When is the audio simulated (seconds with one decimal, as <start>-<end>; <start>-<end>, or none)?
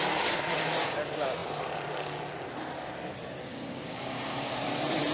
3.5-4.5